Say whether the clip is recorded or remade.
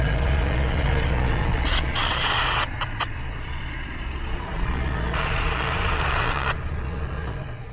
remade